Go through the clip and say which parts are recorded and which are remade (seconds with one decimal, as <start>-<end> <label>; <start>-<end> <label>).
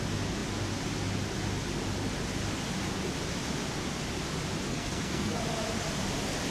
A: 0.0-4.7 recorded; 4.7-5.4 remade; 5.4-6.5 recorded